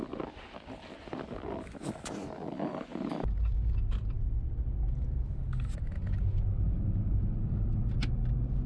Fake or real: real